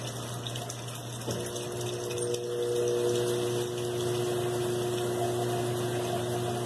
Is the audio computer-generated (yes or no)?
no